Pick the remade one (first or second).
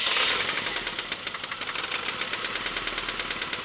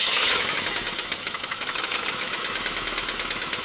second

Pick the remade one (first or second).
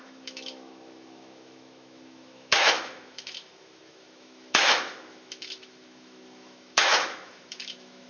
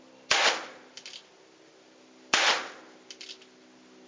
first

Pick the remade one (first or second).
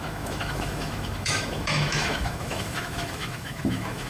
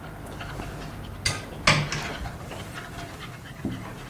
first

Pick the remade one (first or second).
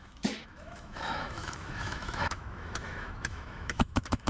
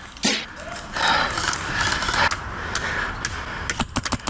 first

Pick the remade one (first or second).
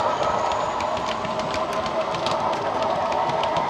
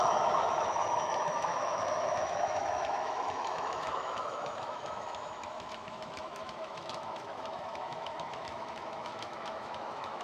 second